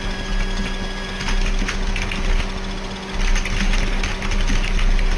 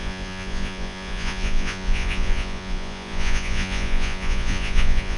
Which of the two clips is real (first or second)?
first